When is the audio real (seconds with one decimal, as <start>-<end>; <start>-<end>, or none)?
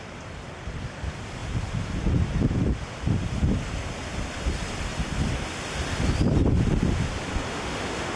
0.0-7.5